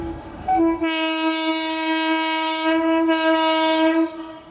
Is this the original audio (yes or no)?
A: no